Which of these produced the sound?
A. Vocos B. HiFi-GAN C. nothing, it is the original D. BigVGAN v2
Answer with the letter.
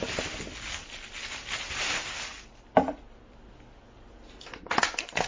C